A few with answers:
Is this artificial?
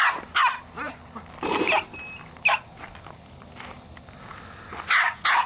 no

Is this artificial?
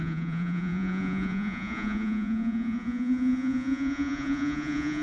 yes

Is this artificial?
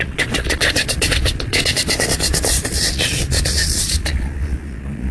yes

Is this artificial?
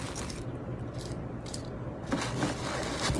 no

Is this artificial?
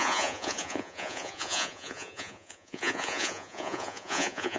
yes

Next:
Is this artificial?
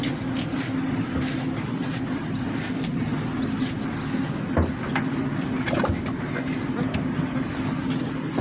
no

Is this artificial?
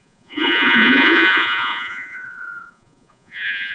yes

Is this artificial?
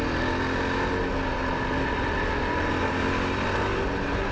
no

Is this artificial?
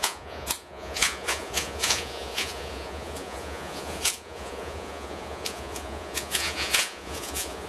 yes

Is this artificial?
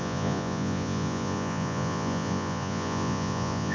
yes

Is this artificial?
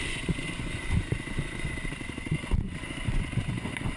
yes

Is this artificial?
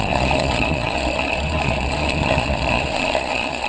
yes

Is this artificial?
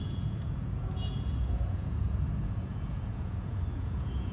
yes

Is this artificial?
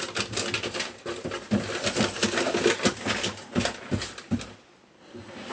no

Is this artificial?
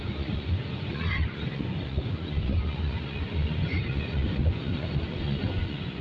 yes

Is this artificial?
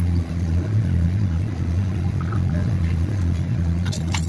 yes